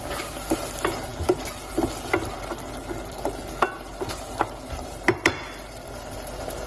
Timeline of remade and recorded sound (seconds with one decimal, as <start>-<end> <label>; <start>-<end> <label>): 0.0-6.7 recorded